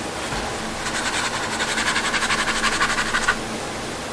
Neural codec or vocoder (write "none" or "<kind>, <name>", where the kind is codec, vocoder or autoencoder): none